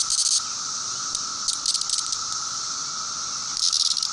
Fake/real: real